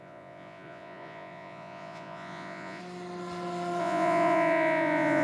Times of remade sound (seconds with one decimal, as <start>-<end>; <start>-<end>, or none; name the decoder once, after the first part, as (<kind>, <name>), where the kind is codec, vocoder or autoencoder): 0.0-2.8 (vocoder, Vocos); 3.8-5.2